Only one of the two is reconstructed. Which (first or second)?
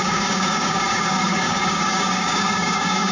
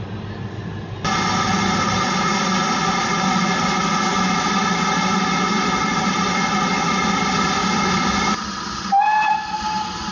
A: first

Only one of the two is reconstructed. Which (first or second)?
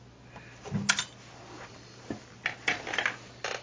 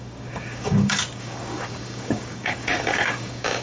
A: second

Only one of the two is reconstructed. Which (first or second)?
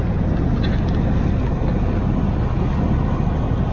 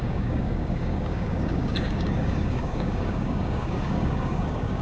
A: second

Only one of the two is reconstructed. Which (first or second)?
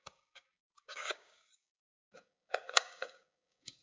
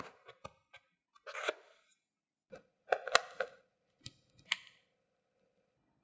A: first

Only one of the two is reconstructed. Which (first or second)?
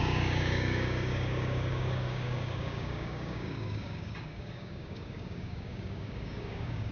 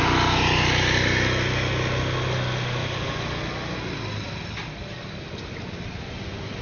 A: first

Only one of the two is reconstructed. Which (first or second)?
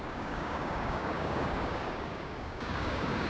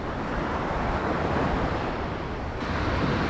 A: first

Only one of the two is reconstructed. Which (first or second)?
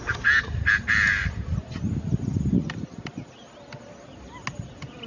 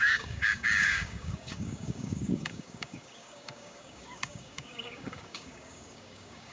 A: second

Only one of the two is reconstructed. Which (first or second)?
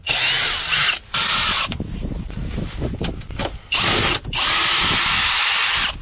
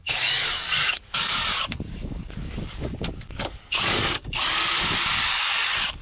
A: second